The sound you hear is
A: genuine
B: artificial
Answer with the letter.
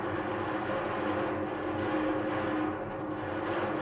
A